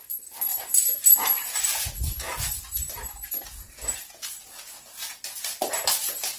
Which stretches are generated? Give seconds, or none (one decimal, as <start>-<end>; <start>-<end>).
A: 0.5-4.3